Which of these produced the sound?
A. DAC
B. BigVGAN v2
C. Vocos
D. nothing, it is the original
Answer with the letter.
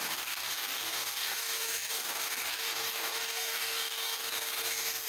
A